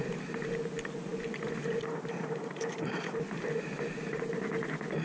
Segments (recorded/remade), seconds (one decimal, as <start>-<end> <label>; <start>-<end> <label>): 0.0-5.0 recorded